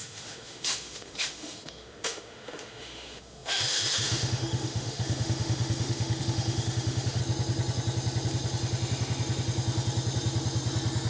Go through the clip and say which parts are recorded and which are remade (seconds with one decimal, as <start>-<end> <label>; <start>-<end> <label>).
0.0-7.2 remade; 7.2-11.1 recorded

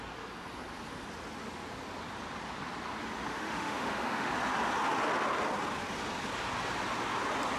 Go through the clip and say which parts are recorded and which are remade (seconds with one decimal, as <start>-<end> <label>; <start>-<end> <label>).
0.0-3.3 recorded; 3.3-4.3 remade; 4.3-7.6 recorded

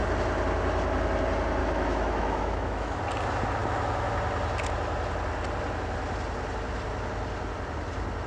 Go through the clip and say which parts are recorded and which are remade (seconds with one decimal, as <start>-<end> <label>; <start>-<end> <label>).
0.0-1.6 recorded; 1.6-3.0 remade; 3.0-3.6 recorded; 3.6-4.1 remade; 4.1-8.3 recorded

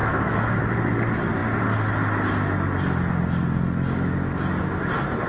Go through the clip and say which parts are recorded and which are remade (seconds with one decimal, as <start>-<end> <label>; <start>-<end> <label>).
0.0-0.6 remade; 0.6-5.3 recorded

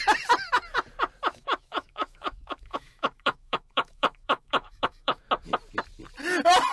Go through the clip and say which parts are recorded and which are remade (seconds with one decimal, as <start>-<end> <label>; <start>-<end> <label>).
0.0-1.3 recorded; 1.3-5.3 remade; 5.3-6.7 recorded

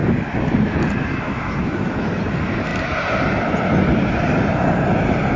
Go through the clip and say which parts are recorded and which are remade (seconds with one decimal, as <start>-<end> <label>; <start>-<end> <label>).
0.0-1.0 recorded; 1.0-2.2 remade; 2.2-5.4 recorded